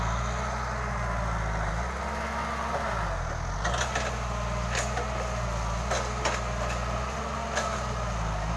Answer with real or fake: real